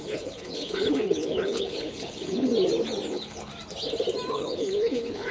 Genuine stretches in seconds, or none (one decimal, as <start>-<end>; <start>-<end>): 2.5-3.1; 3.5-4.3